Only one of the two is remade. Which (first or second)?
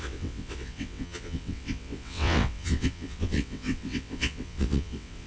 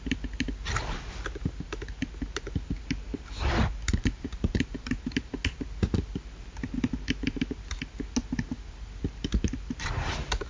first